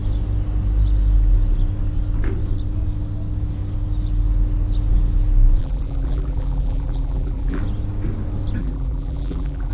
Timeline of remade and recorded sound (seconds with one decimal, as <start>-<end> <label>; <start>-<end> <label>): 0.0-5.6 recorded; 5.6-7.6 remade; 7.6-8.6 recorded; 8.6-9.7 remade